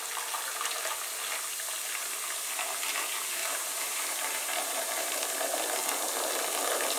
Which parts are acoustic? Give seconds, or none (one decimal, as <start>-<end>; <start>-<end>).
0.0-3.4; 5.4-7.0